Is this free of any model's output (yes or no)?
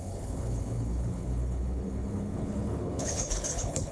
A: no